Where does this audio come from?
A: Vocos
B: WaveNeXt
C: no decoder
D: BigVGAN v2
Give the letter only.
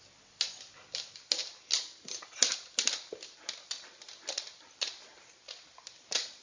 C